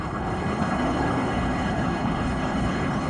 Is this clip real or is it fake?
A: fake